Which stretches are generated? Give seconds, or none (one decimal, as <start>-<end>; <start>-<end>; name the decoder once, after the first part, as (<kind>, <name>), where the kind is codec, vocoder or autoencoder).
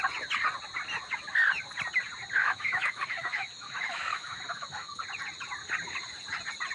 2.4-5.0 (autoencoder, DAC-VAE)